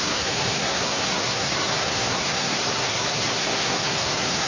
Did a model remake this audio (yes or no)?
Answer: yes